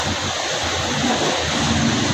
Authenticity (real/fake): real